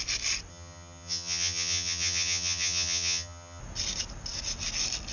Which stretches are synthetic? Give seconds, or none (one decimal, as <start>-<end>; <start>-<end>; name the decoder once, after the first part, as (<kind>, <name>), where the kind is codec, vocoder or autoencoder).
0.5-3.6 (vocoder, HiFi-GAN)